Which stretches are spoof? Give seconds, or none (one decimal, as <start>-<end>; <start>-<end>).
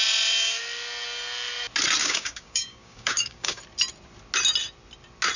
2.0-3.6